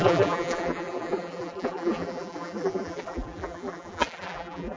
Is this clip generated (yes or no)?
yes